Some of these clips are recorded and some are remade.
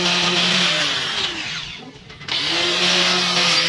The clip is recorded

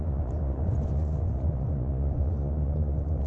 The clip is remade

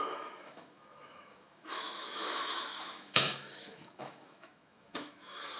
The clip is remade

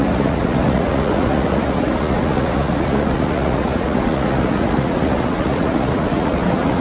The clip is remade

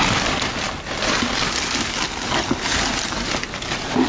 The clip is recorded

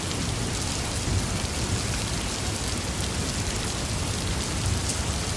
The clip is recorded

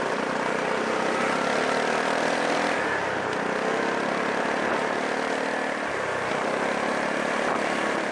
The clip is recorded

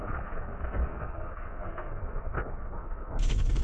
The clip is remade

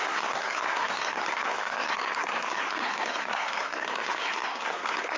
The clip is remade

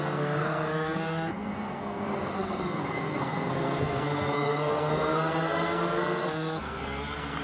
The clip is remade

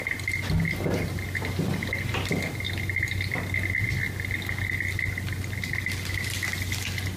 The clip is recorded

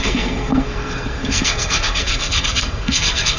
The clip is remade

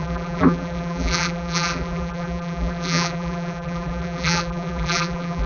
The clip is remade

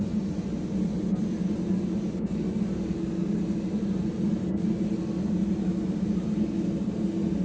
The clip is recorded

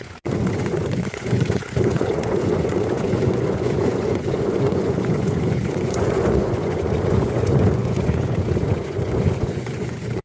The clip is remade